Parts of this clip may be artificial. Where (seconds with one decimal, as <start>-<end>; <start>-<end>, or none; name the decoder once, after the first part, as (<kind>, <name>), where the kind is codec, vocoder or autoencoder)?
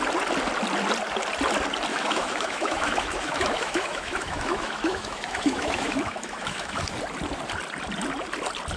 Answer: 1.9-6.8 (autoencoder, DAC-VAE)